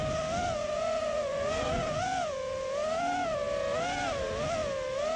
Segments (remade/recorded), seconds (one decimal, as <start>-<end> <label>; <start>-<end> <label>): 0.0-0.6 recorded; 0.6-2.0 remade; 2.0-5.2 recorded